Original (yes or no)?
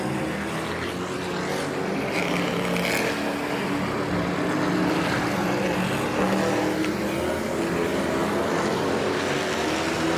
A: yes